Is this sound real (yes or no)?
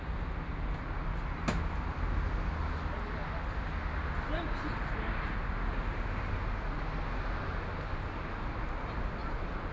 yes